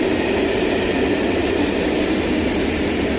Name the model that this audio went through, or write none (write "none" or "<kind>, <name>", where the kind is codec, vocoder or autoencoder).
none